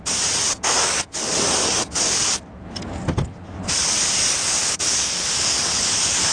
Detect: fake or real fake